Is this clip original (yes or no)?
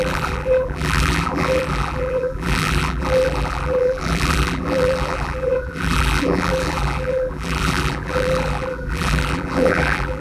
no